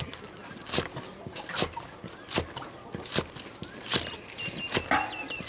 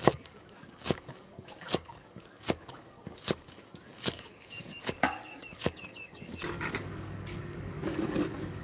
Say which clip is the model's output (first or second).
second